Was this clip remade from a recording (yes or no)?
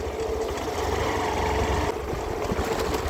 no